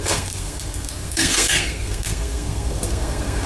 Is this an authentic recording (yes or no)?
no